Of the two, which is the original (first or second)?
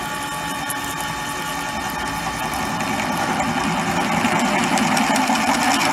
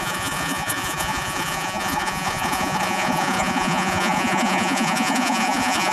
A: first